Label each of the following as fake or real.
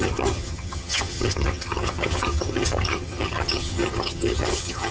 fake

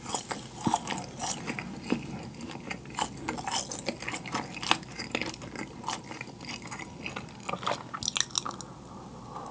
real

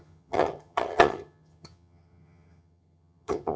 fake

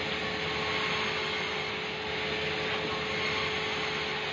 real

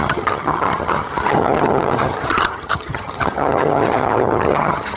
fake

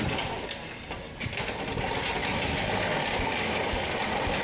real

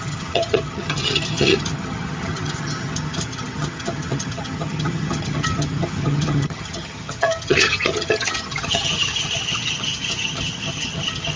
fake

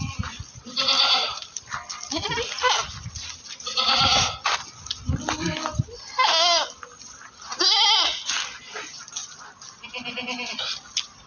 real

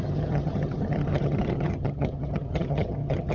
fake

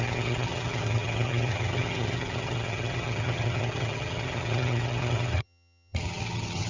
fake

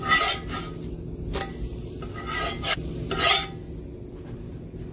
real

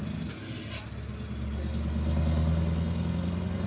real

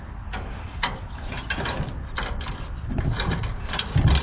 real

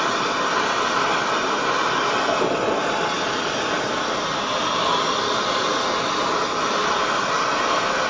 real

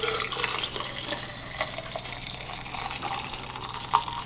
real